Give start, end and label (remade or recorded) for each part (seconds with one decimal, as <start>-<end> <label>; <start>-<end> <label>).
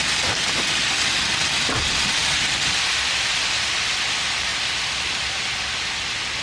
0.0-6.4 recorded